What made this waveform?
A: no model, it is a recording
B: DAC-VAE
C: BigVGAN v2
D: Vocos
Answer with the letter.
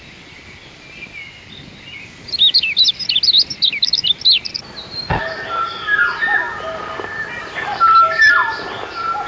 A